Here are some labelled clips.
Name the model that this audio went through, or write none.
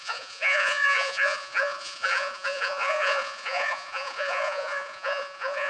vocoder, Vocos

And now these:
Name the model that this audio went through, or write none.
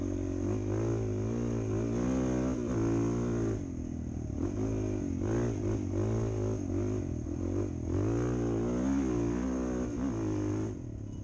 none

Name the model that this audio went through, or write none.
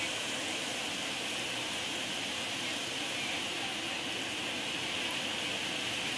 none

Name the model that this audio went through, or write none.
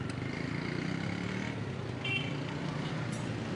none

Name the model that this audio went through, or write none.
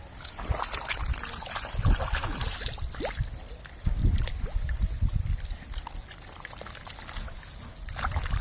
none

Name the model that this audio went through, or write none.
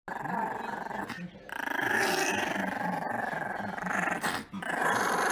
none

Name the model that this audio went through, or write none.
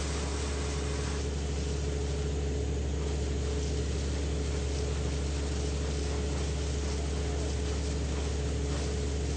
none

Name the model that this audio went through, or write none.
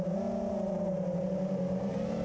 vocoder, BigVGAN v2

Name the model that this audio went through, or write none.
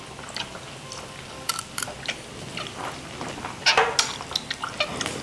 none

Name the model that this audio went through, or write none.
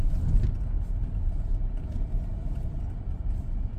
none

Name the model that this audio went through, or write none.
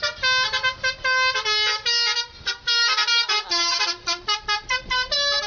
none